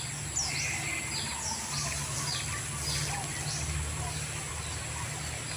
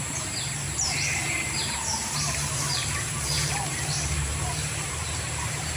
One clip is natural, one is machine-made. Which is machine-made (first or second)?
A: second